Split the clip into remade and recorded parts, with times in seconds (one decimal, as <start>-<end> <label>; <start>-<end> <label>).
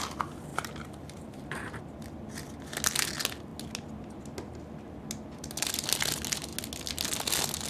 0.0-0.5 recorded; 0.5-1.8 remade; 1.8-7.7 recorded